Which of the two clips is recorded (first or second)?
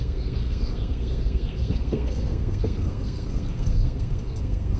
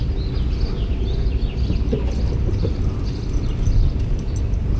second